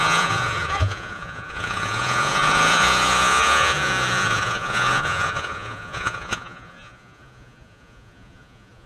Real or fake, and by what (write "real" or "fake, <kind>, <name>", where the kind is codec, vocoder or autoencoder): fake, vocoder, Vocos